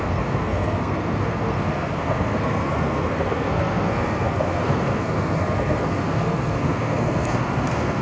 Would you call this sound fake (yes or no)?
yes